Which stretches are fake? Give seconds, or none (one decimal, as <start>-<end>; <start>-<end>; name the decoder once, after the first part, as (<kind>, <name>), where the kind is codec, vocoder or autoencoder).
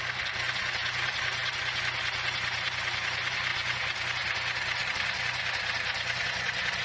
none